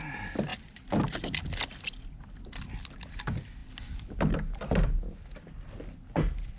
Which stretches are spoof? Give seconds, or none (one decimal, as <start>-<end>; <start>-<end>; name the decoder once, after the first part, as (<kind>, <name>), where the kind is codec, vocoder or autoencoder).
none